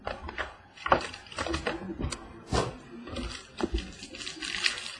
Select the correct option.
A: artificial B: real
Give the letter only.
B